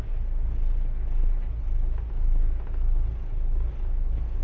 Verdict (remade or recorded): recorded